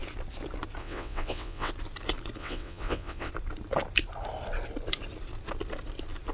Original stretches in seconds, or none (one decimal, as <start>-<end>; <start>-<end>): 0.0-0.8; 1.7-2.4; 3.3-6.3